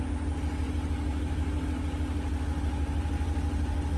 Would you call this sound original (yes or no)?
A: yes